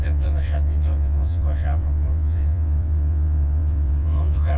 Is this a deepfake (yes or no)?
yes